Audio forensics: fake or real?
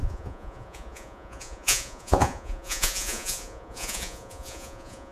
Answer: fake